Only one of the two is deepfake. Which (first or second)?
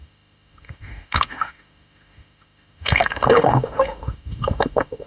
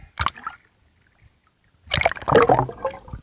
first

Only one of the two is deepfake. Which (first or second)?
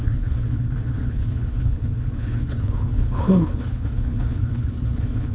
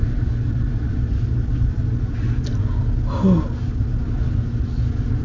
first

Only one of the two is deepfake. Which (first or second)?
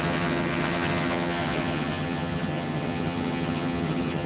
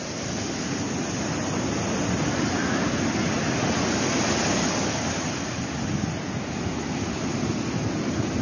first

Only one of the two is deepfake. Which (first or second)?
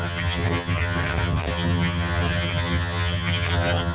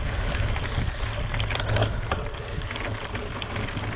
first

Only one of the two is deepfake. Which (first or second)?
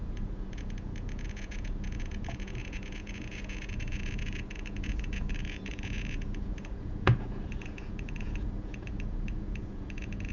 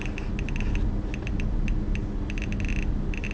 first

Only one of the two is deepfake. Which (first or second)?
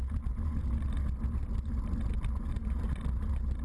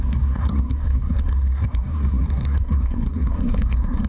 second